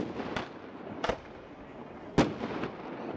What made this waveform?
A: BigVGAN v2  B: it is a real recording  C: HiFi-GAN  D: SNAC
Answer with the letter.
B